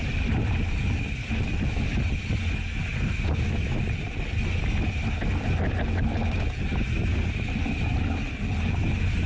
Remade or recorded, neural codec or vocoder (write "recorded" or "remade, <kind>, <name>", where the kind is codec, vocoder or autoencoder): recorded